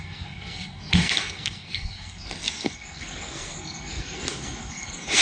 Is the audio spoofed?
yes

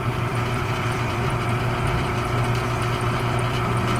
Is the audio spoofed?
yes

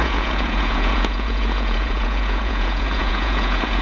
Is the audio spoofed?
yes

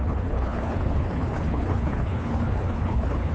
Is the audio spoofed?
yes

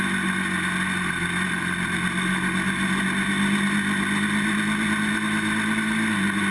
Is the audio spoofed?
no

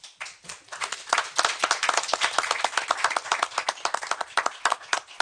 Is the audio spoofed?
no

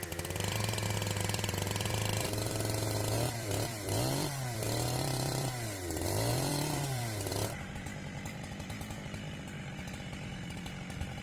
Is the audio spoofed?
yes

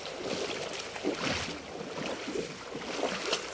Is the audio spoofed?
no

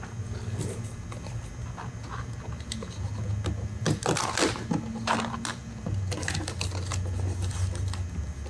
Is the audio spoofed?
no